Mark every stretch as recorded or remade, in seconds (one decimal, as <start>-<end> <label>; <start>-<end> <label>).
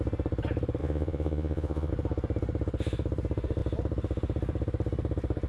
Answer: 0.0-0.8 recorded; 0.8-1.9 remade; 1.9-5.5 recorded